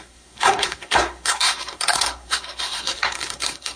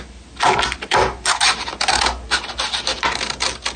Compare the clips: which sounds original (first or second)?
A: second